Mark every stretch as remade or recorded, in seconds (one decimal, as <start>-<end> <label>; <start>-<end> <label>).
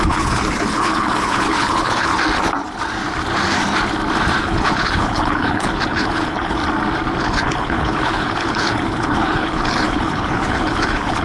0.0-2.1 remade; 2.1-4.4 recorded; 4.4-6.6 remade; 6.6-7.2 recorded; 7.2-11.2 remade